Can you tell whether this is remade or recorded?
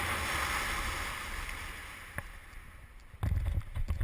recorded